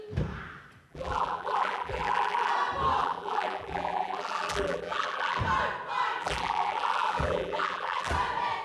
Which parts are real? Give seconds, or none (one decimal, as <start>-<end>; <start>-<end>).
0.0-0.9; 2.5-3.0; 5.4-6.2; 8.1-8.6